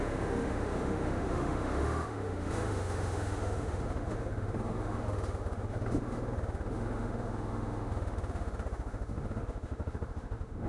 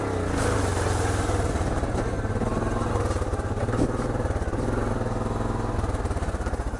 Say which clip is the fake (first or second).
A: first